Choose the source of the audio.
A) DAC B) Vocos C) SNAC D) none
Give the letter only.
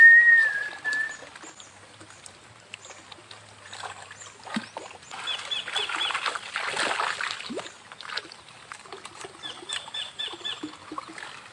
D